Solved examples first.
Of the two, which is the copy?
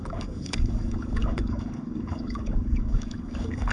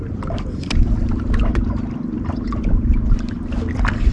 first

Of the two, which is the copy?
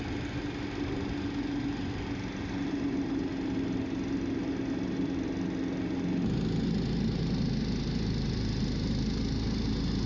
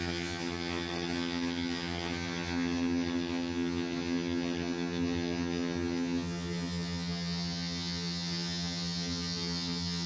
second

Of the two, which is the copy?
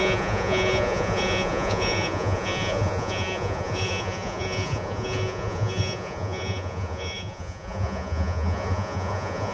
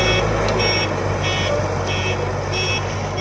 first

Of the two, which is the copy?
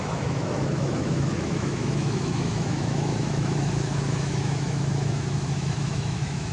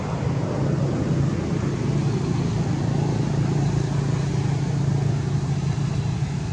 first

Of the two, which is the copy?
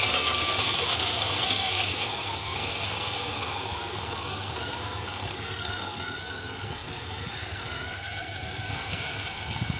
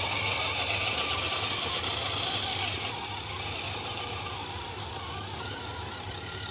first